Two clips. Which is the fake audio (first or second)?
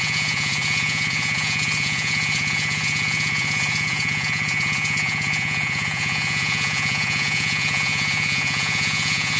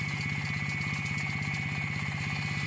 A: first